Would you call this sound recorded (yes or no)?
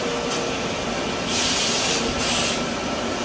yes